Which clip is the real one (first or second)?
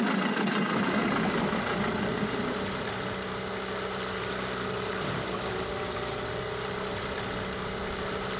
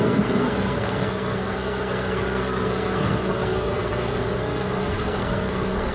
first